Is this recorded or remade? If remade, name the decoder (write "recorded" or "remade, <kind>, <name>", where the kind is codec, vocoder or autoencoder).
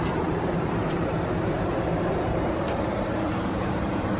remade, vocoder, BigVGAN v2